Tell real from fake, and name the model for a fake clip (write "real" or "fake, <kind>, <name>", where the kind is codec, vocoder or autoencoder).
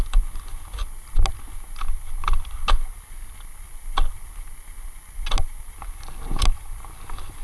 real